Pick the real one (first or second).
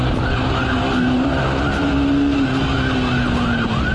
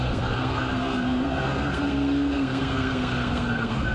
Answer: first